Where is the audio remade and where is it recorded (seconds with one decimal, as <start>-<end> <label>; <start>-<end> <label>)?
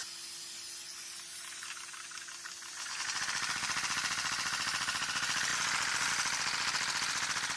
0.0-7.6 recorded